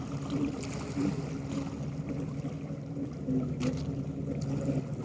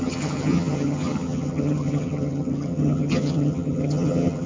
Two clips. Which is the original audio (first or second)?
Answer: first